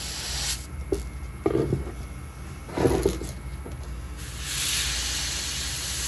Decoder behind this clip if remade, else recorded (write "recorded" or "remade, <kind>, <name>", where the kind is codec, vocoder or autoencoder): recorded